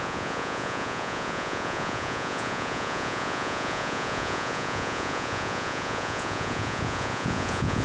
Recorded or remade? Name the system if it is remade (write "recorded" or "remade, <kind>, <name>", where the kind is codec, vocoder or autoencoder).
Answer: remade, vocoder, Vocos